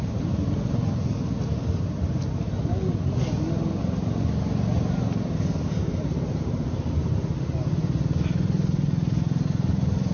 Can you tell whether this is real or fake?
real